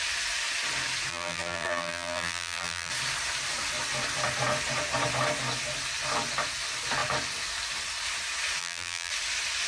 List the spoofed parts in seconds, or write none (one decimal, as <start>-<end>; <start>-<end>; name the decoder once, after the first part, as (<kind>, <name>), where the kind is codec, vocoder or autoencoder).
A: 1.1-2.9 (vocoder, BigVGAN v2); 8.6-9.1